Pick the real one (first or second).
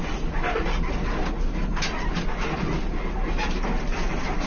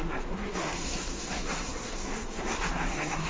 first